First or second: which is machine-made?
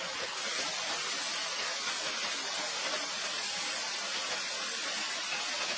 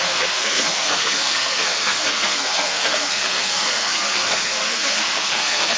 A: second